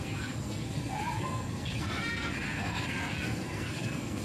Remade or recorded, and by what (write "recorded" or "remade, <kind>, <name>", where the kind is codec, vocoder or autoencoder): remade, codec, SNAC